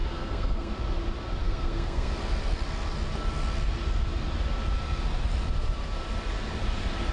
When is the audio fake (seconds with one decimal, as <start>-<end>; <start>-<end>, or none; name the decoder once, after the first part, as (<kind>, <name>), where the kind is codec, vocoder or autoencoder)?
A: 0.0-0.7 (codec, SNAC); 1.4-2.1

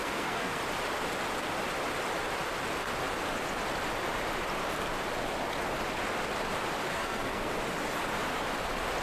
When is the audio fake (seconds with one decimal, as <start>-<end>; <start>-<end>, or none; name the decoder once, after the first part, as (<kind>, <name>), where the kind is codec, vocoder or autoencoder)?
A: 0.0-0.6 (codec, SNAC); 6.9-7.5

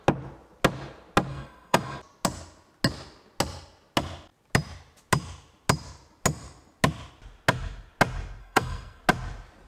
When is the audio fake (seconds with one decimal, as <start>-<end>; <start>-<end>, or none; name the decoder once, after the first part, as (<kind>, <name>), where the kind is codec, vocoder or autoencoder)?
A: 1.3-2.0 (codec, SNAC); 8.4-9.0

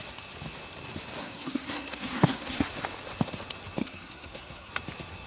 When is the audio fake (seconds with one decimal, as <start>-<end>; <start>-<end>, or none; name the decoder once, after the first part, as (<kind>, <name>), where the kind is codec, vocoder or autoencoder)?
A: 1.2-2.6 (codec, SNAC); 3.8-4.7

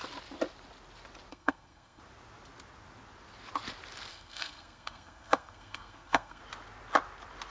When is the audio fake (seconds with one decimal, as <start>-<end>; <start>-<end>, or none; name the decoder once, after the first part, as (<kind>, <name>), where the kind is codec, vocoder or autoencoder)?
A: 1.3-2.0 (codec, SNAC); 4.1-6.4

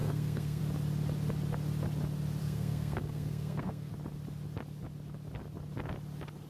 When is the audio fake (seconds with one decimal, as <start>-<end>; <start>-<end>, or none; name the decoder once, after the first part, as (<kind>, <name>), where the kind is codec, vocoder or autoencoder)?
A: 0.0-0.6 (codec, SNAC); 2.4-3.9